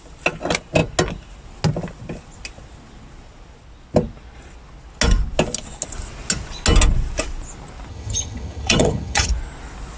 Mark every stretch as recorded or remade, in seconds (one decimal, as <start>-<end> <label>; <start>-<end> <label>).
0.0-7.9 recorded; 7.9-9.3 remade; 9.3-10.0 recorded